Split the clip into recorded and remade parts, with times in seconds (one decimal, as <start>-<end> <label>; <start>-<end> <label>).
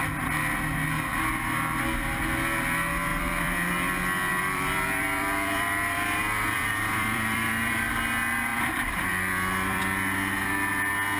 0.0-3.1 recorded; 3.1-3.7 remade; 3.7-4.3 recorded; 4.3-7.9 remade; 7.9-8.5 recorded; 8.5-9.8 remade; 9.8-11.2 recorded